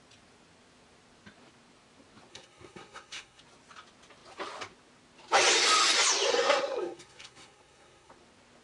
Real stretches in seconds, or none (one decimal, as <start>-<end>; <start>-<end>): 0.0-2.3; 3.4-6.3; 8.1-8.6